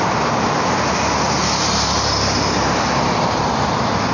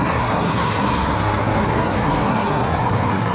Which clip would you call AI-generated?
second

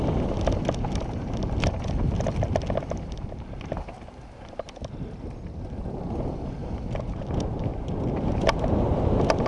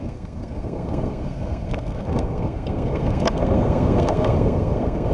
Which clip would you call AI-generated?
second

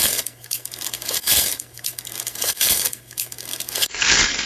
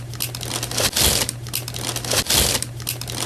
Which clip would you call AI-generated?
first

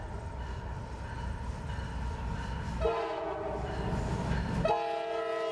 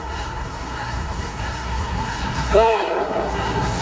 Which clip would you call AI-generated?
second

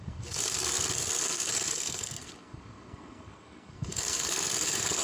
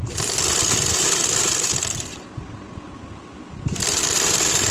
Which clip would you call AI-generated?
first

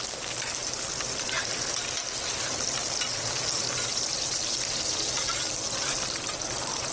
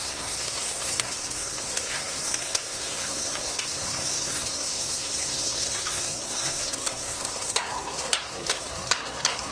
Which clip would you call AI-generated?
second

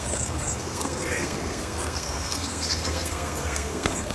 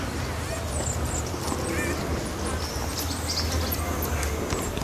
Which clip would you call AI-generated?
first